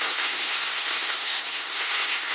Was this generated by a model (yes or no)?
yes